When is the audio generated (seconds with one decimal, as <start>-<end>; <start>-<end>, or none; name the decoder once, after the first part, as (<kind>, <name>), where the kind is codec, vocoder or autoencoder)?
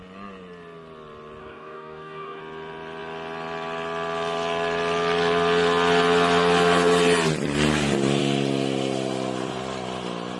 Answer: 1.4-2.4 (codec, DAC)